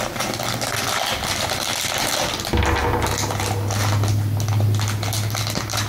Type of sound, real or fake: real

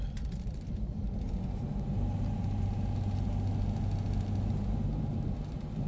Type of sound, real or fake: real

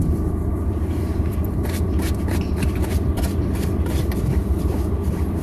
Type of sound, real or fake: fake